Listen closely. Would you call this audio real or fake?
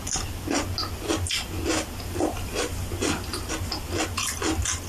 real